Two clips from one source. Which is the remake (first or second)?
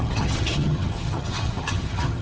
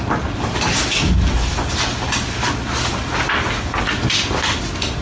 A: first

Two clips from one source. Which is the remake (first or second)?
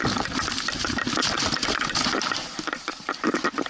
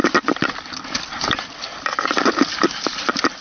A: first